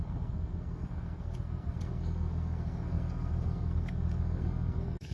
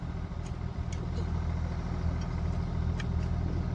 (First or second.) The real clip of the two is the second